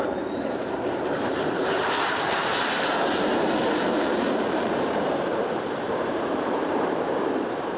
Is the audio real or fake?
fake